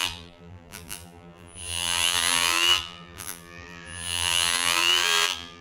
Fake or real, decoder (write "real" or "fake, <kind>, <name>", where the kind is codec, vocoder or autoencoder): fake, vocoder, BigVGAN v2